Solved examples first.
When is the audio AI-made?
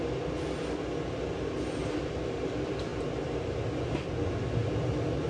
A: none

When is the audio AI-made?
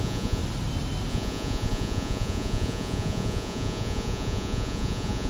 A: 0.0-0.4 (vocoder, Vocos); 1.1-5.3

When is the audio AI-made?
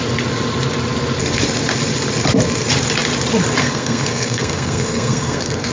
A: 3.6-5.7 (codec, SNAC)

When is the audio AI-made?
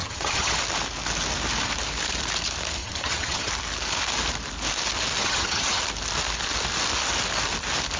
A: 0.0-0.6 (vocoder, HiFi-GAN); 2.8-3.5; 5.2-5.8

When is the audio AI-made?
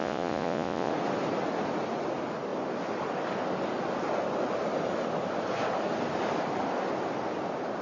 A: 0.0-0.9 (vocoder, Vocos)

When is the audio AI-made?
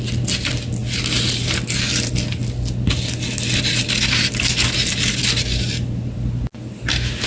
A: none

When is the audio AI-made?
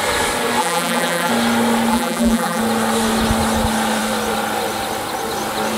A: 0.6-1.3 (vocoder, BigVGAN v2); 1.9-2.6